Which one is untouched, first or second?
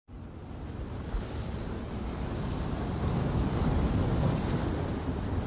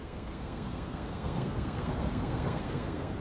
first